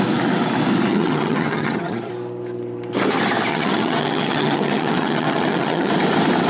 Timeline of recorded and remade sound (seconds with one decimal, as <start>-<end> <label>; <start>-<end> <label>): 0.0-0.9 recorded; 0.9-2.1 remade; 2.1-3.5 recorded; 3.5-5.9 remade; 5.9-6.5 recorded